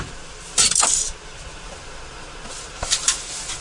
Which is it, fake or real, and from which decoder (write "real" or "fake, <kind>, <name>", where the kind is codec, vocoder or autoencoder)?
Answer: fake, vocoder, BigVGAN v2